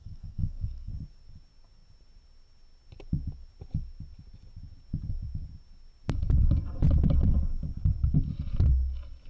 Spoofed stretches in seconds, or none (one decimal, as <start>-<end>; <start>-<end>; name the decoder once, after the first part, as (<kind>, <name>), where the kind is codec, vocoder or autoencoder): 0.0-0.9 (codec, SNAC)